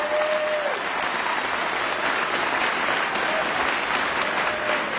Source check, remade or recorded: recorded